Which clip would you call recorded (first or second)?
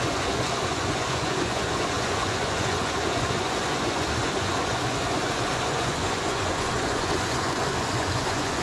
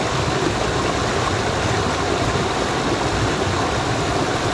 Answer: second